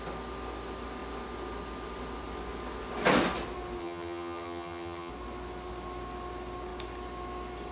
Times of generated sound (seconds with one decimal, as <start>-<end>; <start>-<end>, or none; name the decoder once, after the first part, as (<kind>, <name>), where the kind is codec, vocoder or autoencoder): 3.8-5.1 (vocoder, HiFi-GAN)